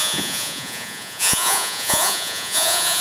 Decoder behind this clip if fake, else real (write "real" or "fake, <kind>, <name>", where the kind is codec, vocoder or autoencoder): fake, vocoder, Vocos